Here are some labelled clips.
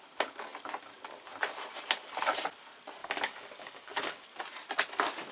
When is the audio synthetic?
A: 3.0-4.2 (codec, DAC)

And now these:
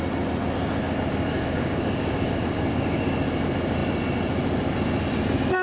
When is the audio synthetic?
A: 1.3-3.1 (codec, DAC)

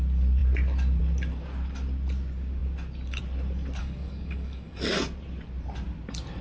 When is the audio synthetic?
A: 3.8-4.9 (codec, DAC)

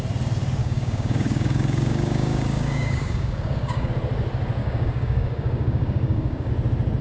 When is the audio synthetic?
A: 0.6-3.9 (codec, DAC); 4.6-6.5

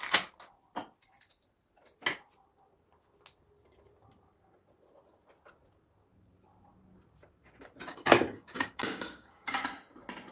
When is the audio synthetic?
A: 7.9-9.6 (codec, DAC)